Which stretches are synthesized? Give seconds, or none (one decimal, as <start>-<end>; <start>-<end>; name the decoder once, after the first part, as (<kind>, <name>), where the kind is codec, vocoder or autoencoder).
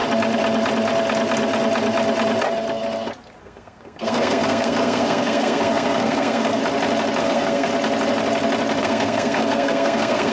3.4-6.6 (codec, SNAC); 7.2-7.7; 8.8-10.3